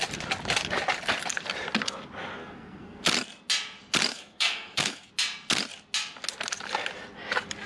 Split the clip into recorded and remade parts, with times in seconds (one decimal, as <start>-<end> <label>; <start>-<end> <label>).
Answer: 0.0-2.4 recorded; 2.4-3.0 remade; 3.0-4.1 recorded; 4.1-5.1 remade; 5.1-7.7 recorded